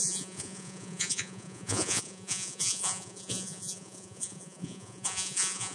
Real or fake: fake